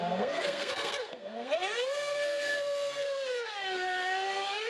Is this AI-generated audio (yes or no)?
yes